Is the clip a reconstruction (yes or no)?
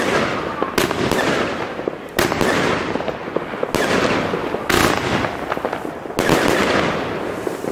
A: no